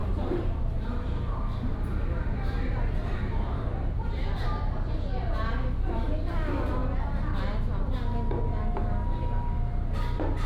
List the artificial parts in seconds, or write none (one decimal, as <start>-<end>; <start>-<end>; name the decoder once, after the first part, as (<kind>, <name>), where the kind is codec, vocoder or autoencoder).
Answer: 0.0-4.4 (vocoder, BigVGAN v2)